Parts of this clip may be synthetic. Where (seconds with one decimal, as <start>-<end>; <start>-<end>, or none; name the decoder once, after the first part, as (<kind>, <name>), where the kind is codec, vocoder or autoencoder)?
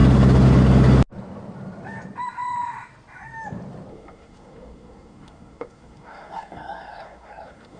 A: 3.9-7.8 (codec, SNAC)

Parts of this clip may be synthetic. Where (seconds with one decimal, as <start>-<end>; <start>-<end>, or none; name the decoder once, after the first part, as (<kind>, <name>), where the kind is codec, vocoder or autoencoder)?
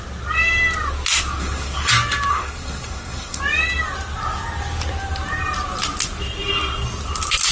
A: 1.4-1.9 (codec, SNAC); 2.3-3.4